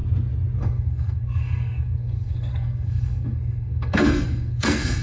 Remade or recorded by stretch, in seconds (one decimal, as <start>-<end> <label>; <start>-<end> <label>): 0.0-0.6 recorded; 0.6-5.0 remade